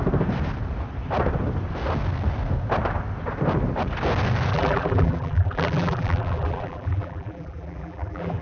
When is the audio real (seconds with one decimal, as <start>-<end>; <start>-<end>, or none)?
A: 0.0-4.5